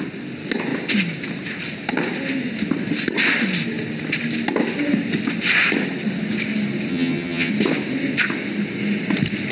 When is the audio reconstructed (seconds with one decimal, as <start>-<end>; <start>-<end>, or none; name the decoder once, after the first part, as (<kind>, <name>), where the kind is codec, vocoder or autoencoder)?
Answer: 6.9-7.5 (vocoder, HiFi-GAN)